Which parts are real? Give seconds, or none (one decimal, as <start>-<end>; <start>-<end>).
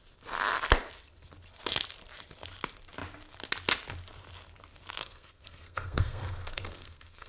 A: 0.0-5.0